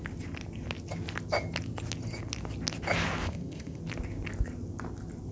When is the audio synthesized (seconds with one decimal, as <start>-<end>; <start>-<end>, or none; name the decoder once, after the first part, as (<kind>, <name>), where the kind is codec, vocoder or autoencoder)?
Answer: 3.2-3.8 (codec, ZipCodec)